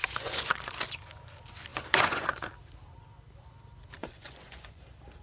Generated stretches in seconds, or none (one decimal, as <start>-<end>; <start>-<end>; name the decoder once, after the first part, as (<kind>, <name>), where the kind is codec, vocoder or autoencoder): 0.0-0.7 (vocoder, Vocos); 1.7-2.5; 4.0-4.8